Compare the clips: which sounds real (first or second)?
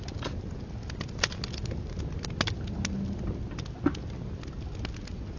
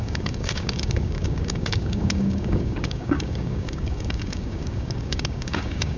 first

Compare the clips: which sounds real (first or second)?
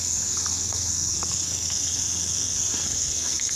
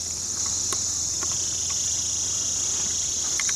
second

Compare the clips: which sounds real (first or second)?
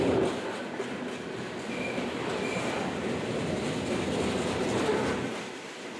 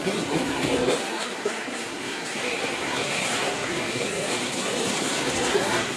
first